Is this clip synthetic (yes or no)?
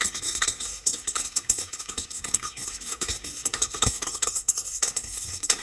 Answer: yes